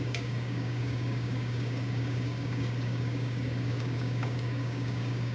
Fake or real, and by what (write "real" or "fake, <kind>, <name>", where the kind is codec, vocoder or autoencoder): fake, codec, DAC